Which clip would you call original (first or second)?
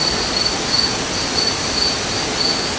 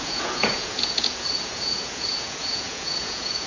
first